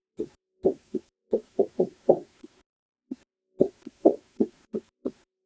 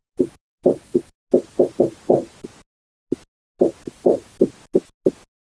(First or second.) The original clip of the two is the second